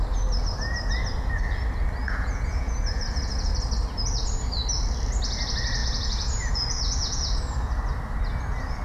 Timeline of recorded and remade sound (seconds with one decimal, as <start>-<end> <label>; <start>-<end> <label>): 0.0-2.0 recorded; 2.0-3.5 remade; 3.5-5.8 recorded; 5.8-7.4 remade; 7.4-8.8 recorded

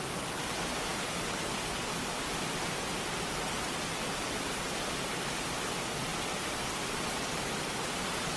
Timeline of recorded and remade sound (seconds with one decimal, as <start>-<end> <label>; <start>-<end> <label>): 0.0-6.1 recorded; 6.1-7.6 remade; 7.6-8.4 recorded